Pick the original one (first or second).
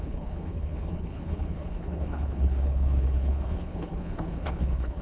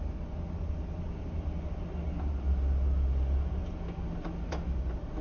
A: second